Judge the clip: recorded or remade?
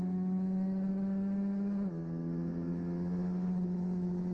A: remade